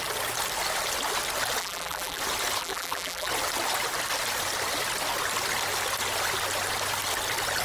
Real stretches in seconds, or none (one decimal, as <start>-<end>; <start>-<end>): 0.0-1.6; 2.2-2.6; 3.3-7.6